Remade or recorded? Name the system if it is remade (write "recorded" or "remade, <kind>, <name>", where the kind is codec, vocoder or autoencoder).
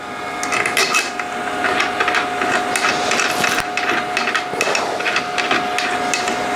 recorded